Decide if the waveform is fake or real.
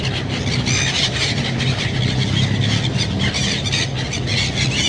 real